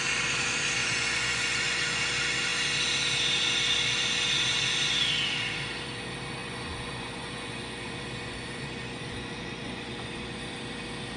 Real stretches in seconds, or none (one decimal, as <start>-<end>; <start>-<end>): 0.0-0.8; 2.0-6.4; 10.5-11.2